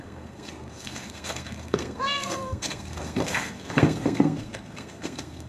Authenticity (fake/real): fake